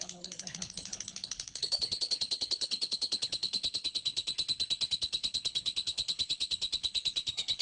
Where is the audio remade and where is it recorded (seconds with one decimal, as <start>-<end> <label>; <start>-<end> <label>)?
0.0-4.3 remade; 4.3-4.9 recorded; 4.9-7.6 remade